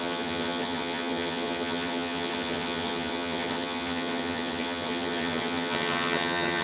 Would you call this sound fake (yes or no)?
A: yes